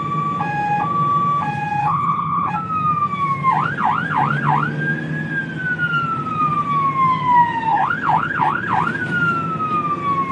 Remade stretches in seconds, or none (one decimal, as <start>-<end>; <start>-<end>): 1.8-2.5; 7.7-8.7